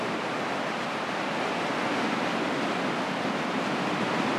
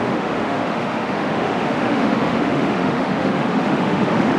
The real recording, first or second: first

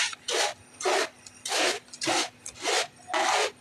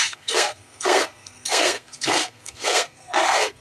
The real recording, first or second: first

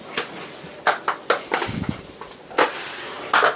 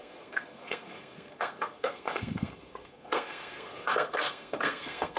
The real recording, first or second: first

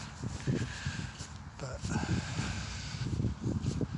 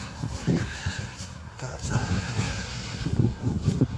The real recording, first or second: first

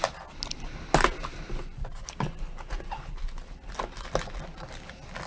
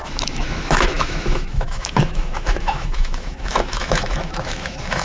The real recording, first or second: first